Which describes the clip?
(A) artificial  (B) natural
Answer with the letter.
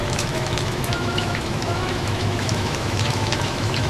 A